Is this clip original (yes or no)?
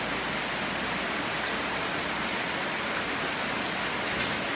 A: yes